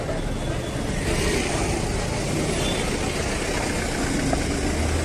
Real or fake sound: real